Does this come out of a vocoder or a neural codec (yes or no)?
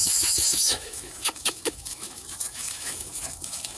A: yes